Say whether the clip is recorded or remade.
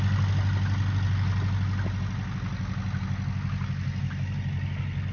recorded